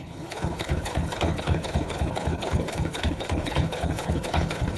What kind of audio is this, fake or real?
fake